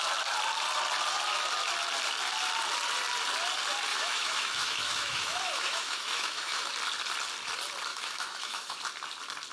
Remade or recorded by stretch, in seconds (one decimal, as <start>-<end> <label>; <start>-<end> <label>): 0.0-3.9 recorded; 3.9-6.7 remade; 6.7-7.9 recorded; 7.9-8.8 remade; 8.8-9.5 recorded